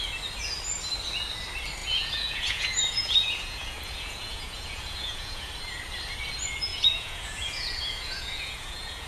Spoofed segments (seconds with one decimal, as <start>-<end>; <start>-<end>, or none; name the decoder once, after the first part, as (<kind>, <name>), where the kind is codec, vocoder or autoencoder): 1.8-5.5 (vocoder, Vocos); 6.7-9.1